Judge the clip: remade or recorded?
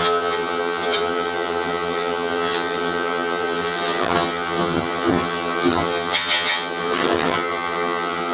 remade